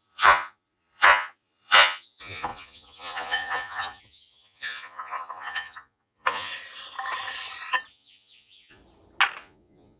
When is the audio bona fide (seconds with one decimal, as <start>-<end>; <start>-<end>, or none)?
6.5-7.9; 8.8-9.4